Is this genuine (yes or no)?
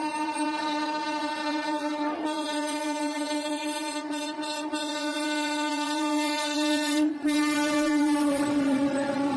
no